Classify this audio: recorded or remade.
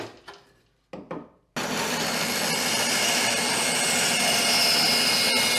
recorded